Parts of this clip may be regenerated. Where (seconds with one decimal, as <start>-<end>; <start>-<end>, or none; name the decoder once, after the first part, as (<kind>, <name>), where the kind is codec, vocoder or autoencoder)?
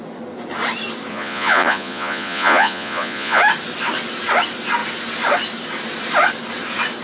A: 1.1-3.4 (vocoder, Vocos)